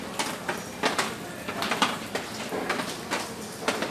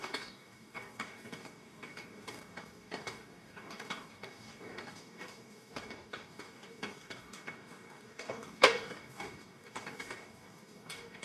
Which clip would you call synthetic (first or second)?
second